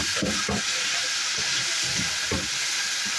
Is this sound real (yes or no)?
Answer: yes